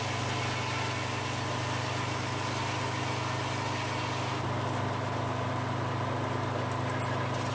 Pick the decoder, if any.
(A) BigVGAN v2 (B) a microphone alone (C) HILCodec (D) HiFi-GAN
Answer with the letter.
B